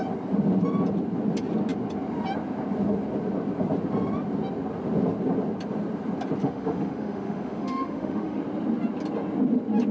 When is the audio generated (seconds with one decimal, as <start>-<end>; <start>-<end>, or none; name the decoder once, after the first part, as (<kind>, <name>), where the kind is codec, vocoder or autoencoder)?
6.4-8.4 (autoencoder, DAC-VAE)